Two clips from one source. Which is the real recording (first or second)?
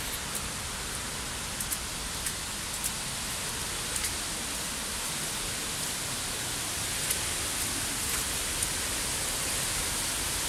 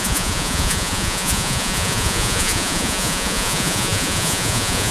first